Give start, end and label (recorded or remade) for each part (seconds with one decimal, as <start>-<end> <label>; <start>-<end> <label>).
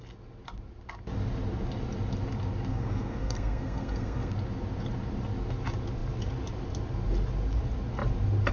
0.0-2.7 recorded; 2.7-4.3 remade; 4.3-8.5 recorded